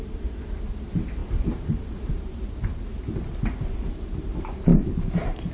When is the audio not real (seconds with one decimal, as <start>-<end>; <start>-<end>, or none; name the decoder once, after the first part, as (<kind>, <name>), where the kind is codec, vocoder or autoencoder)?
0.0-2.9 (vocoder, BigVGAN v2); 3.9-4.7

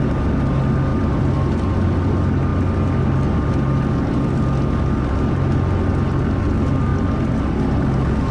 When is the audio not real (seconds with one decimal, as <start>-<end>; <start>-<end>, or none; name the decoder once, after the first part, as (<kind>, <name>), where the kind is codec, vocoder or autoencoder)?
0.9-2.0 (vocoder, BigVGAN v2)